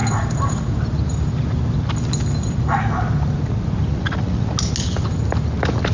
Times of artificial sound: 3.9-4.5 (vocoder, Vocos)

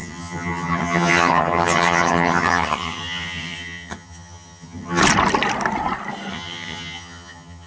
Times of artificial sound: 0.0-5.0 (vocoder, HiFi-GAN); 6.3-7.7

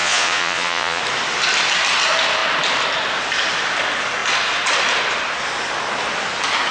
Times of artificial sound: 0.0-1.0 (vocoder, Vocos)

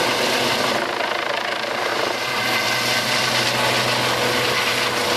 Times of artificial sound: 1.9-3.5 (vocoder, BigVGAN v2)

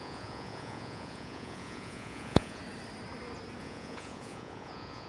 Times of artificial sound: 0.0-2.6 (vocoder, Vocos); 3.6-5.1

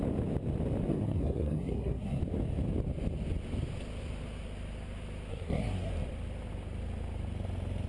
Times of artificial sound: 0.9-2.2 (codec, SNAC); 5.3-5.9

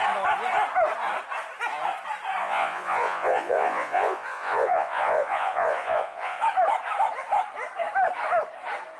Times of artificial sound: 2.4-6.4 (vocoder, Vocos)